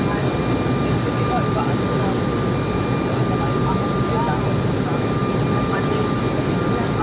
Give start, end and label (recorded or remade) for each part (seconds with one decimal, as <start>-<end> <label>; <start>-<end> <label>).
0.0-7.0 recorded

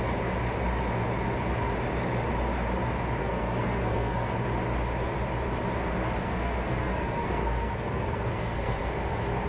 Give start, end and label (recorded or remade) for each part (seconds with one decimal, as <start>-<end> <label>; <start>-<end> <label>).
0.0-3.2 recorded; 3.2-4.3 remade; 4.3-6.2 recorded; 6.2-8.9 remade; 8.9-9.5 recorded

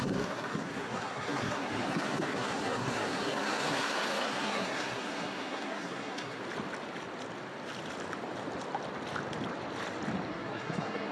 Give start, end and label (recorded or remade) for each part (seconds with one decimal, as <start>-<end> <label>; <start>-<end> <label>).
0.0-6.4 remade; 6.4-10.3 recorded; 10.3-11.1 remade

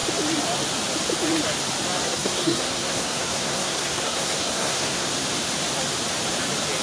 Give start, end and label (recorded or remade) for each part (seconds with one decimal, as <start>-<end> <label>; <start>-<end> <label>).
0.0-2.0 recorded; 2.0-5.1 remade; 5.1-6.8 recorded

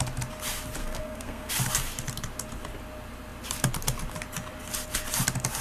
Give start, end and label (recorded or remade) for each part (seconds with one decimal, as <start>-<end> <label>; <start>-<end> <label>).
0.0-0.8 recorded; 0.8-1.5 remade; 1.5-5.6 recorded

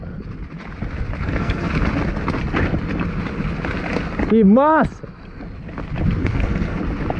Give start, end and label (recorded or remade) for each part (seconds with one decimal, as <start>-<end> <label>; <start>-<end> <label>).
0.0-1.2 recorded; 1.2-1.7 remade; 1.7-6.2 recorded; 6.2-6.8 remade; 6.8-7.2 recorded

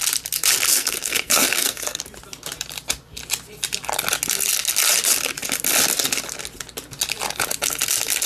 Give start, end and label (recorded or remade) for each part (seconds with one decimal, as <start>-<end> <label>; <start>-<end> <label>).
0.0-0.7 recorded; 0.7-2.0 remade; 2.0-8.3 recorded